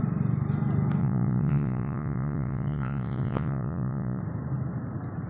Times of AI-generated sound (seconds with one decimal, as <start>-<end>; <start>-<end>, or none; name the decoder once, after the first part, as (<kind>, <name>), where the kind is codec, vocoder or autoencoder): 1.0-4.2 (vocoder, Vocos)